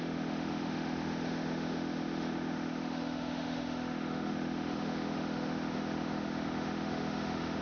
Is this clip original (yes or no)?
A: no